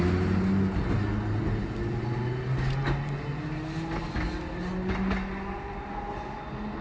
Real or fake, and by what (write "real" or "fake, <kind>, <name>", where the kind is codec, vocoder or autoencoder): real